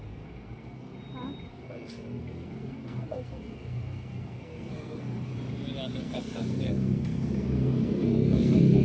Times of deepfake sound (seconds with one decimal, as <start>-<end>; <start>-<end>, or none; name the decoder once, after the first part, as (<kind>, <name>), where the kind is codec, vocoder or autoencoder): 0.0-0.9 (codec, SNAC); 1.5-5.3; 6.0-8.8